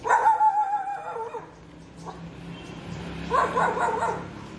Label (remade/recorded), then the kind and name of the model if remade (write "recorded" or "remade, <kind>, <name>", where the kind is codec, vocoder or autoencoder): recorded